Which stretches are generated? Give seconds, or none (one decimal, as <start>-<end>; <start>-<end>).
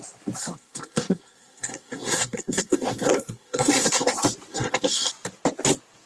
0.4-4.1; 4.5-5.1